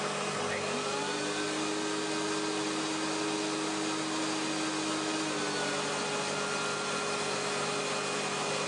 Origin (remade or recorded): recorded